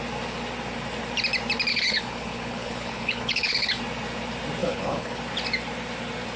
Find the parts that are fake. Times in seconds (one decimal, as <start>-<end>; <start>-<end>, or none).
1.7-3.8; 4.6-5.2